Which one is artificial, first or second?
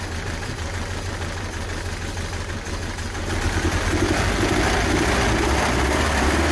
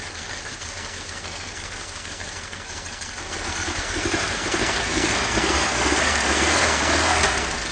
second